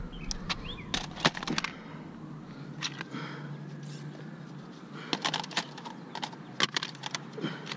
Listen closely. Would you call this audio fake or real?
real